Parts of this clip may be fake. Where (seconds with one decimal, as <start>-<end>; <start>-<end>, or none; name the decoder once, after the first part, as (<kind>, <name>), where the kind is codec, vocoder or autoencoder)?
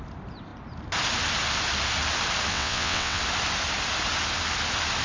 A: 2.5-3.2 (vocoder, WaveNeXt)